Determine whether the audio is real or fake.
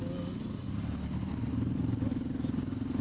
real